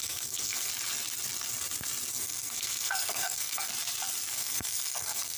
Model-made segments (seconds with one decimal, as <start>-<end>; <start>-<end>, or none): 0.0-0.7; 2.1-3.7; 4.3-5.4